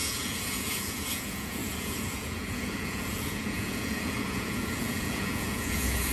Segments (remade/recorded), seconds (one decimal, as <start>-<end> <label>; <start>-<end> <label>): 0.0-6.1 remade